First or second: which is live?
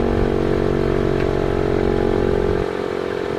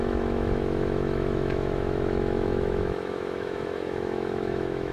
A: first